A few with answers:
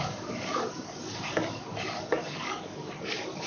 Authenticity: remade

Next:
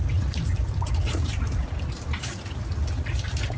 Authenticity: recorded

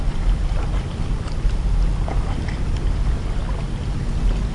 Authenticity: recorded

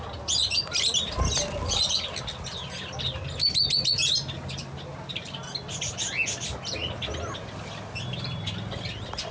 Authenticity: recorded